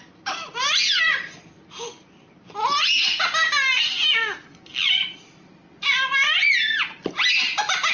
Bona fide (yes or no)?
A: yes